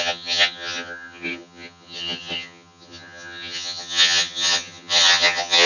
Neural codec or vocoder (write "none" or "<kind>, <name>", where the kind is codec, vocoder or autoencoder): vocoder, HiFi-GAN